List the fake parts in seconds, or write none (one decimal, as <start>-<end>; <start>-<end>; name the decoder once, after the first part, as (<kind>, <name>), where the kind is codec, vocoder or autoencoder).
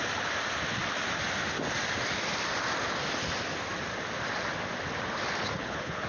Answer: 5.4-6.1 (codec, HILCodec)